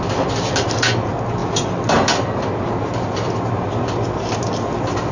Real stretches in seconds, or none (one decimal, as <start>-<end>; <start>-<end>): 0.0-5.1

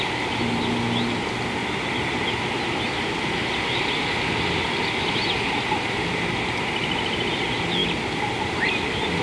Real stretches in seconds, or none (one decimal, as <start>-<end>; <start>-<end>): 0.0-9.2

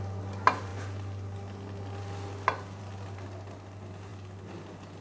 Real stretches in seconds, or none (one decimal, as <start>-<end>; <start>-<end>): 0.0-5.0

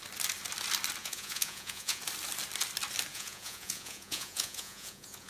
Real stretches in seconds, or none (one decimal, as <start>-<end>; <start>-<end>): 0.0-1.0; 2.0-3.1

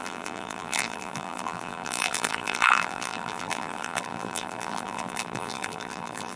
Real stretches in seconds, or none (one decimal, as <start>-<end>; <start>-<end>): none

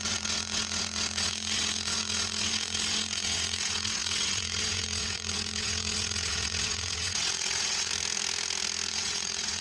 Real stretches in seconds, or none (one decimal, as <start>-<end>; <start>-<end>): 7.9-8.9